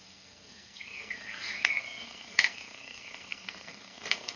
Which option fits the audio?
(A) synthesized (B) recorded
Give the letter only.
A